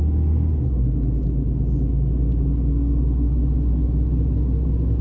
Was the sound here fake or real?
real